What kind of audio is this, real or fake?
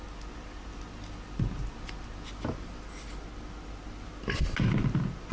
real